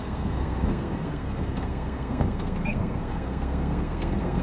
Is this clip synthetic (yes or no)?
yes